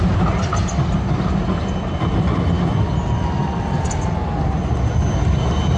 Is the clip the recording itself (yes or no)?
yes